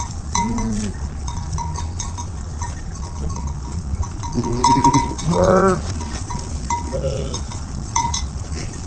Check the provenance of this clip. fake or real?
fake